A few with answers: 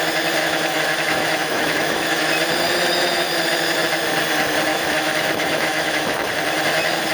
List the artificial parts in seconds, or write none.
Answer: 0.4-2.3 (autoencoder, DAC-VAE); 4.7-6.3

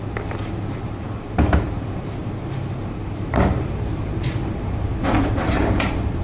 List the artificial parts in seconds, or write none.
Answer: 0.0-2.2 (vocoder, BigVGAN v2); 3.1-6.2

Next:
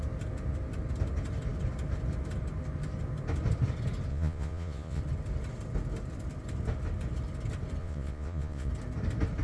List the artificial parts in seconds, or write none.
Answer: 4.1-5.0 (vocoder, Vocos); 7.8-8.7